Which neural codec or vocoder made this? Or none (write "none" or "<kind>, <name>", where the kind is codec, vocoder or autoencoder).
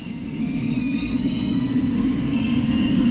codec, SNAC